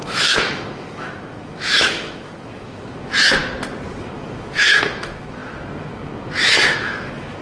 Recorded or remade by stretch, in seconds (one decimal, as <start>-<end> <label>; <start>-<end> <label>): 0.0-3.4 remade; 3.4-4.0 recorded; 4.0-7.4 remade